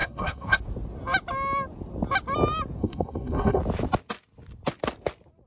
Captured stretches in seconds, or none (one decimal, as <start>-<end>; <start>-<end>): 0.6-2.8; 3.6-5.5